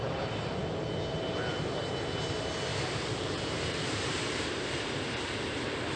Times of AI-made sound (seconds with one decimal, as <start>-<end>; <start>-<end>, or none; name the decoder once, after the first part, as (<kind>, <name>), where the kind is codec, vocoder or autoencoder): 2.7-5.3 (vocoder, BigVGAN v2)